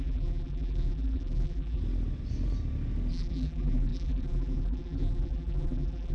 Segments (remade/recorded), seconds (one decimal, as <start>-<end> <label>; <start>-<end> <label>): 0.0-1.8 remade; 1.8-3.1 recorded; 3.1-6.1 remade